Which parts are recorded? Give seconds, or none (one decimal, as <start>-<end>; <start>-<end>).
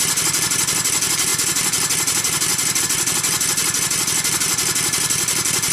0.0-5.7